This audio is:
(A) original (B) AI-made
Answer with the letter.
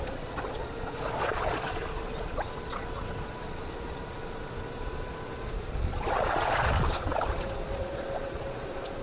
B